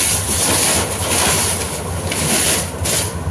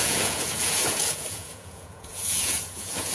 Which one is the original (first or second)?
first